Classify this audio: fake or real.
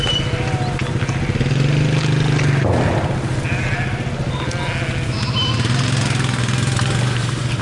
real